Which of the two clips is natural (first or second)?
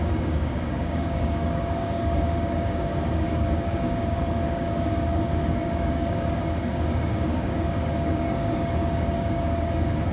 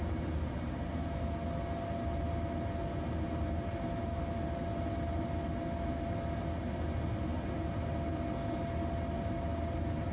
second